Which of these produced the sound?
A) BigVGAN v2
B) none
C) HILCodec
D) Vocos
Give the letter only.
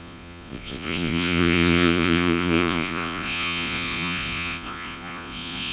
D